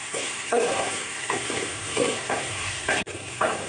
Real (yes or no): no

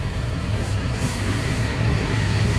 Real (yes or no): no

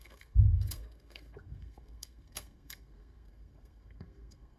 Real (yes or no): no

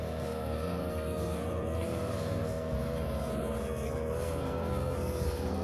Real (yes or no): no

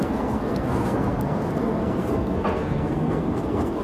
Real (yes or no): no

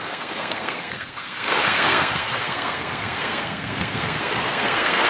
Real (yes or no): no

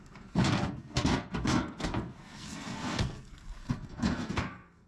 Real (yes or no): no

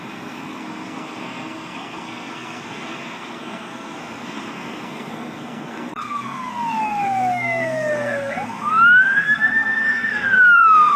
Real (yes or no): no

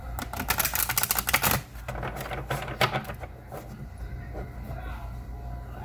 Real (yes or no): yes